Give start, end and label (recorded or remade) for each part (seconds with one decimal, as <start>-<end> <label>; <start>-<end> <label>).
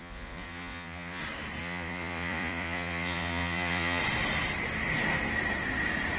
0.0-1.2 remade; 1.2-1.6 recorded; 1.6-4.0 remade; 4.0-6.2 recorded